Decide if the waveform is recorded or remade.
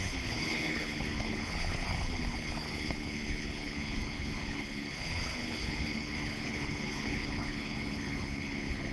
remade